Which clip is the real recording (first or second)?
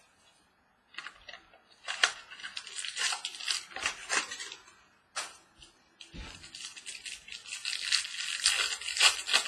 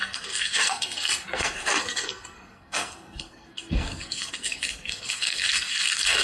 first